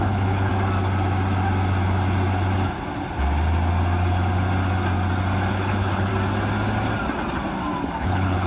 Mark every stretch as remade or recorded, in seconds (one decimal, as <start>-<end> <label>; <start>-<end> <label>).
0.0-0.5 remade; 0.5-5.5 recorded; 5.5-6.1 remade; 6.1-8.0 recorded; 8.0-8.5 remade